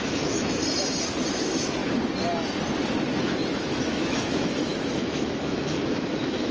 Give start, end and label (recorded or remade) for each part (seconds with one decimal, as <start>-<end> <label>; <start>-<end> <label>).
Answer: 0.0-0.6 remade; 0.6-1.3 recorded; 1.3-1.8 remade; 1.8-3.2 recorded; 3.2-6.5 remade